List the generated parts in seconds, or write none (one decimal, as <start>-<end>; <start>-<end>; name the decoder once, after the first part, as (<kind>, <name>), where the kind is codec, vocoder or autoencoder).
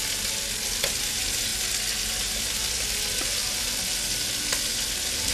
none